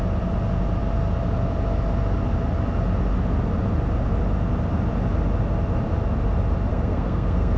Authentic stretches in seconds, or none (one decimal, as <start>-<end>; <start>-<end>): 0.0-6.7